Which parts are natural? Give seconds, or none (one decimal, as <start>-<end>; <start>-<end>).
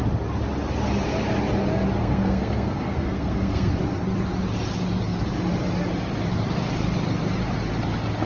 0.0-2.0; 3.7-8.3